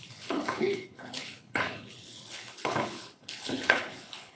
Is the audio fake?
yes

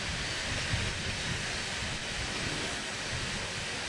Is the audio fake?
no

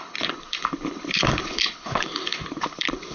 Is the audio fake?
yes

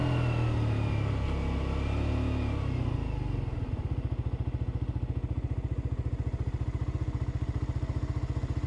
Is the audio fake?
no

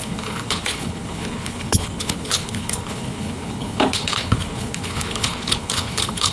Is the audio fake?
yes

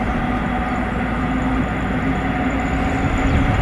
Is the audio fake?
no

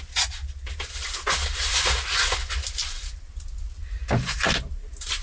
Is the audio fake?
no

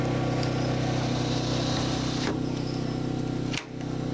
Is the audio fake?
no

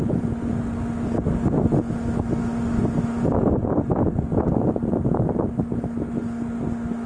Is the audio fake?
no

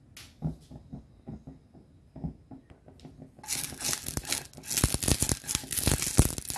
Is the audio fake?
no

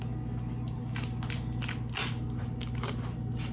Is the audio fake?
no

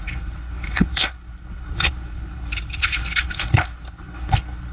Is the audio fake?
yes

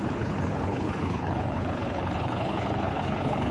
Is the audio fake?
yes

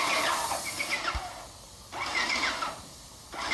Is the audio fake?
no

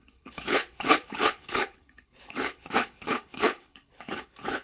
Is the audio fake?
yes